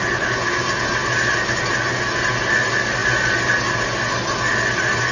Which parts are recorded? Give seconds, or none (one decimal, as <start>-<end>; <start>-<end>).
0.0-5.1